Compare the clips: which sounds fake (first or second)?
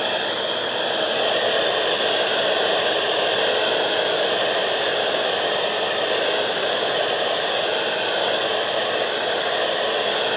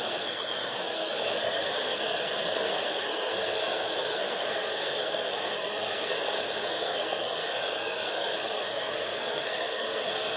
second